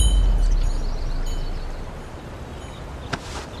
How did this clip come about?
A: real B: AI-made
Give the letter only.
A